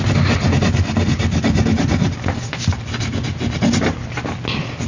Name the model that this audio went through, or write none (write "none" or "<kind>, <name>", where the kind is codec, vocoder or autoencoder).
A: none